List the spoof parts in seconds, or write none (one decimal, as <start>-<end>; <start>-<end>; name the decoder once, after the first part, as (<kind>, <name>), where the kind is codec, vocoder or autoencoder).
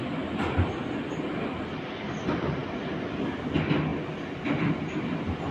3.9-4.5 (vocoder, BigVGAN v2)